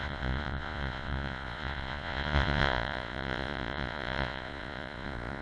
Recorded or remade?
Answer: remade